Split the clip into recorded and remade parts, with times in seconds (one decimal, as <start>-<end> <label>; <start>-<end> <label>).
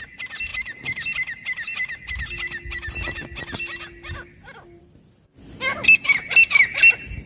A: 0.0-7.3 recorded